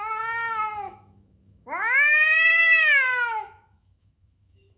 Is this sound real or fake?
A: fake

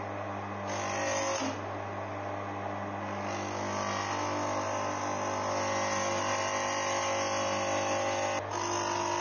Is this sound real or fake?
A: real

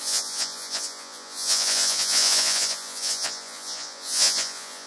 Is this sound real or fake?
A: fake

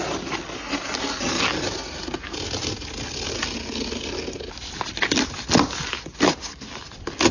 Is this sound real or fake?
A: real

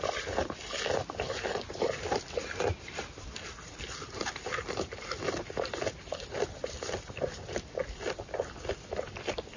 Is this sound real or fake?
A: fake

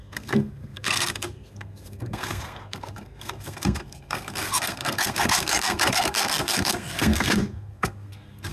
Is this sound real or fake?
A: fake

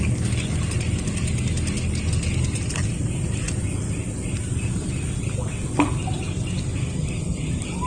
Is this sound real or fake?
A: real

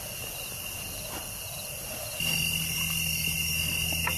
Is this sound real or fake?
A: real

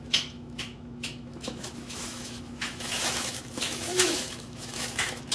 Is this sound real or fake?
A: fake